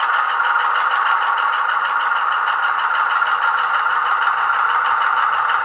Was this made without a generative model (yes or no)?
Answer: yes